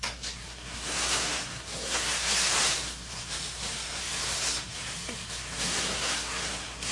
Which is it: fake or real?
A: fake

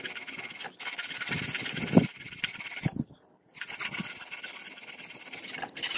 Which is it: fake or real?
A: real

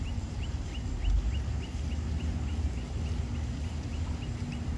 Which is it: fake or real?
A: real